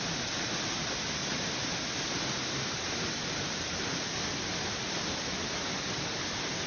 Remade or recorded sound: recorded